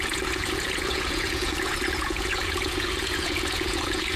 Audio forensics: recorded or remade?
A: remade